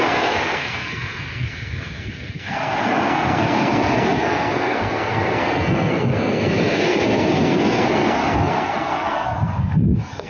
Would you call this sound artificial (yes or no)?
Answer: yes